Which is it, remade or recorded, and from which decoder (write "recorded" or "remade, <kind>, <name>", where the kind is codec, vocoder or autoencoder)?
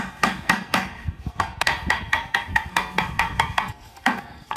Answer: remade, codec, SNAC